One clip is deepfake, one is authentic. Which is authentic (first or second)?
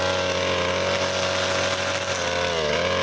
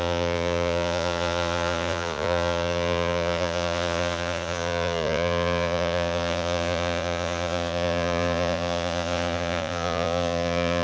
first